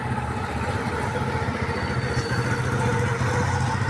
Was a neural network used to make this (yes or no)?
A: no